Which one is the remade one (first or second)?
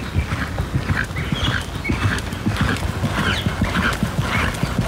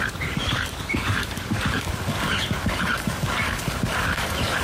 second